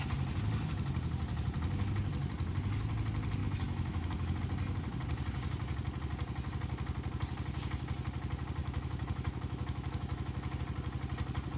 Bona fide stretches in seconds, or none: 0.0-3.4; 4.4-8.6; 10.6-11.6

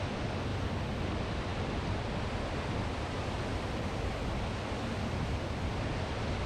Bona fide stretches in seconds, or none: 0.0-6.5

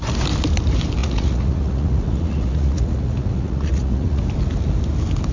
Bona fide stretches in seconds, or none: 0.0-1.0; 4.2-5.3